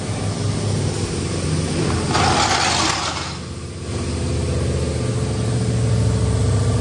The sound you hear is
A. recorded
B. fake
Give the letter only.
A